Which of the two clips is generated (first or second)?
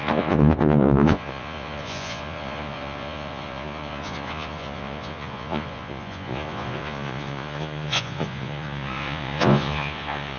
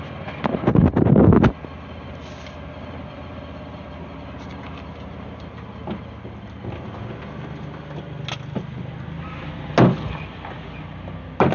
first